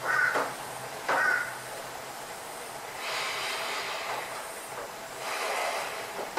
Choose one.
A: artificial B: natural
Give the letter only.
B